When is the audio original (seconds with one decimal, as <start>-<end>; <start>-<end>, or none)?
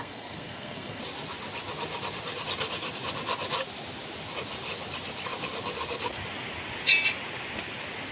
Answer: 1.0-8.1